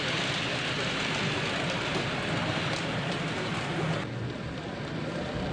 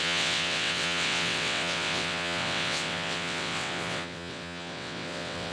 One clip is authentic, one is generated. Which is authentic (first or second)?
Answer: first